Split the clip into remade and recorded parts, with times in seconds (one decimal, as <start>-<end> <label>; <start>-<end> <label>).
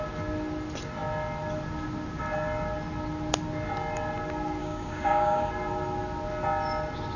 0.0-4.6 recorded; 4.6-5.5 remade; 5.5-7.2 recorded